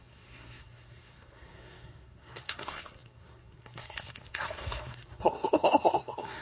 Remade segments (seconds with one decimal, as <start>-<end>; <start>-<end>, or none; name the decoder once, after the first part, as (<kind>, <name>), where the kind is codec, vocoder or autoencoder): 0.0-6.4 (codec, SNAC)